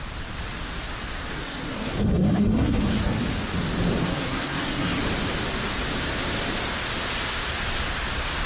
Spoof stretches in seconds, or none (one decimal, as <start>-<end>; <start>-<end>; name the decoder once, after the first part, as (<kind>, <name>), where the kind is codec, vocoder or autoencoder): 1.3-3.2 (codec, SNAC); 4.0-5.0